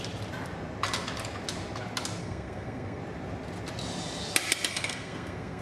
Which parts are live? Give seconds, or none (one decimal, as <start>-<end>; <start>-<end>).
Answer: 0.0-2.2; 3.0-4.7